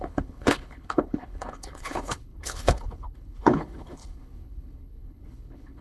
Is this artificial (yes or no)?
yes